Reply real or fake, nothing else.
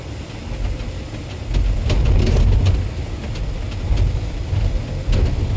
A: real